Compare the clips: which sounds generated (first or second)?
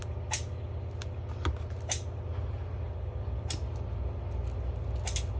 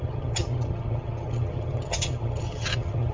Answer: second